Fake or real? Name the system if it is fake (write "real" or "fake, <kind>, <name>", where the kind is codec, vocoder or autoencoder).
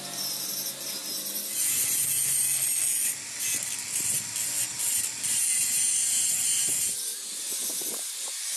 real